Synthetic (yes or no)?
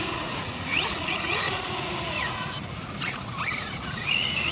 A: yes